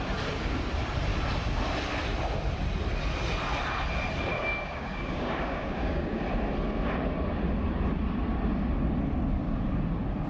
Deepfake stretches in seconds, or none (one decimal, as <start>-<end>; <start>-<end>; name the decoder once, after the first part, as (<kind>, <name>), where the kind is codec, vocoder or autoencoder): 4.3-6.2 (codec, DAC)

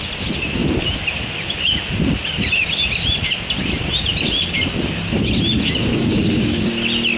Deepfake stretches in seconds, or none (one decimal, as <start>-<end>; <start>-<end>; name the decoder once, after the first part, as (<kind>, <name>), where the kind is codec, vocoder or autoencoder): 5.9-6.7 (codec, DAC)